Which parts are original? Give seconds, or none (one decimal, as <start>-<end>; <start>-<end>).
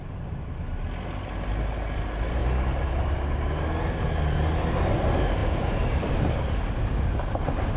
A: 0.0-5.4; 6.5-7.8